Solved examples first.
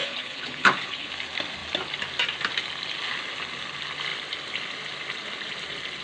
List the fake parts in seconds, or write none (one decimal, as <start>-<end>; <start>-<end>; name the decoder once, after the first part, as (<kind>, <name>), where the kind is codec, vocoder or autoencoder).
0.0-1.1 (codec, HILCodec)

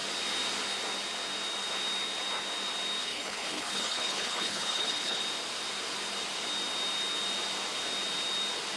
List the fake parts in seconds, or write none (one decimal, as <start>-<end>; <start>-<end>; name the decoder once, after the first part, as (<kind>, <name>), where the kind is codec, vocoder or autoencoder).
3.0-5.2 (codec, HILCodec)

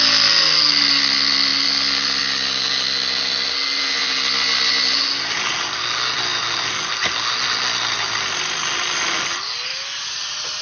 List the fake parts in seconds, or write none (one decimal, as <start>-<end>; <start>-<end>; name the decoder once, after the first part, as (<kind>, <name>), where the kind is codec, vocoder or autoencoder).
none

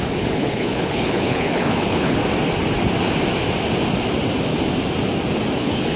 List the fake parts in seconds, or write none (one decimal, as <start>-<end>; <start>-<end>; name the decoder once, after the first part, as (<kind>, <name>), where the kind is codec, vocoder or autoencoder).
0.0-2.2 (codec, HILCodec); 5.6-6.0